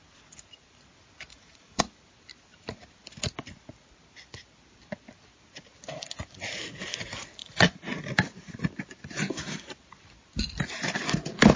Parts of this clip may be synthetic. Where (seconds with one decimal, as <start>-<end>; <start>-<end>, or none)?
1.3-1.8; 7.4-8.0